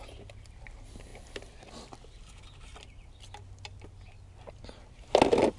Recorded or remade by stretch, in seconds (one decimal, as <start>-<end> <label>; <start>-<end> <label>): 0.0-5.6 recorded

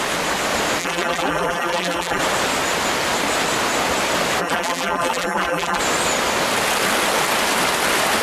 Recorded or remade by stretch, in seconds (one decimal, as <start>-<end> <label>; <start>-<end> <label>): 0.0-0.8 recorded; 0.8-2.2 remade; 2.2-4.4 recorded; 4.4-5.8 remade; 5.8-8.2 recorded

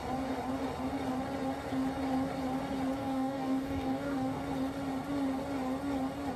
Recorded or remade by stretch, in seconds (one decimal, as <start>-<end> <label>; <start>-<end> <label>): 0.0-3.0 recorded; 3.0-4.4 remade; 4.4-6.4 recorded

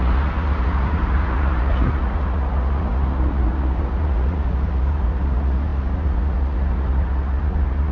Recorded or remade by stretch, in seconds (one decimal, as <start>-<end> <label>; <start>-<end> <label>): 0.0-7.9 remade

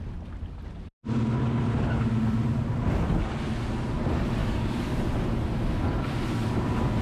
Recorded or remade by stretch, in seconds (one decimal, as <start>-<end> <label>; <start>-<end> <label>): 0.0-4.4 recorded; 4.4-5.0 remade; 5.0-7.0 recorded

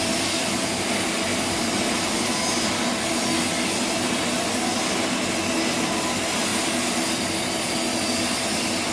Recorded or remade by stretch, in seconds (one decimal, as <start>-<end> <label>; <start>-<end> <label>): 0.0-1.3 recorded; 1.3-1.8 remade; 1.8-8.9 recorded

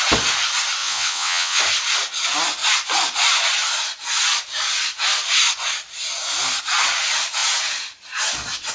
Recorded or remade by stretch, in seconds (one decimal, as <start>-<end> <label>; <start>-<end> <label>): 0.0-0.8 recorded; 0.8-1.6 remade; 1.6-8.7 recorded

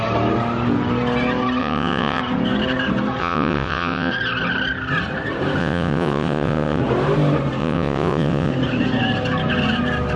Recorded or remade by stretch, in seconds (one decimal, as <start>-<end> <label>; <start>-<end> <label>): 0.0-1.6 recorded; 1.6-2.2 remade; 2.2-3.2 recorded; 3.2-4.1 remade; 4.1-5.6 recorded; 5.6-6.8 remade; 6.8-7.6 recorded; 7.6-8.5 remade; 8.5-10.2 recorded